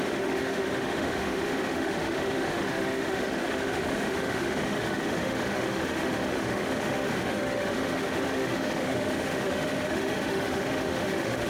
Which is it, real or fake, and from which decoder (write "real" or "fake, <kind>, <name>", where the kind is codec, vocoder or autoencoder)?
fake, autoencoder, DAC-VAE